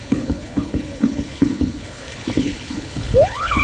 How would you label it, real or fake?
fake